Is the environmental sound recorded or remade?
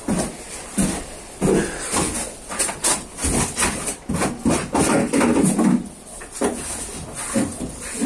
recorded